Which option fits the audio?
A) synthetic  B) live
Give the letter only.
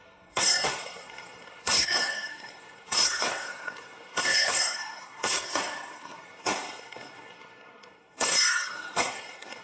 A